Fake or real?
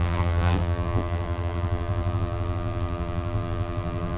fake